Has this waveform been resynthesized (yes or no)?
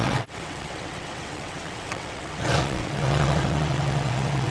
yes